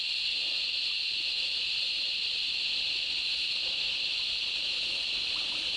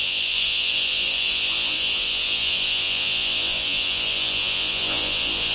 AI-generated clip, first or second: second